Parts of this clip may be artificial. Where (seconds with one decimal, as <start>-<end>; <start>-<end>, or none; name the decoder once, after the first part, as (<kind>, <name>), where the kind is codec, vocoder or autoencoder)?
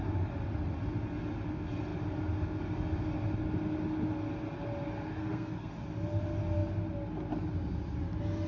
5.2-5.7 (codec, SNAC)